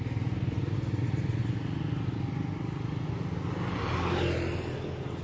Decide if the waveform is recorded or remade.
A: recorded